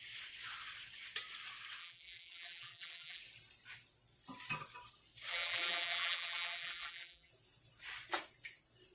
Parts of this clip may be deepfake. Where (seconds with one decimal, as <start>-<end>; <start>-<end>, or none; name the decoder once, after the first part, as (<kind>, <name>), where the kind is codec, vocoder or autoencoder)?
1.8-3.2 (vocoder, BigVGAN v2); 5.3-7.3